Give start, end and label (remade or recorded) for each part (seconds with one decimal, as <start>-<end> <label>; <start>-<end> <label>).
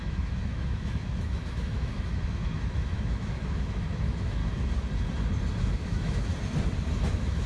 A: 0.0-4.4 remade; 4.4-5.6 recorded; 5.6-6.3 remade; 6.3-7.1 recorded; 7.1-7.5 remade